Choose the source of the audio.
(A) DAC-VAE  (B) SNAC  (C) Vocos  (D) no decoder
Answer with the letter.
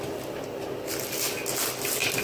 D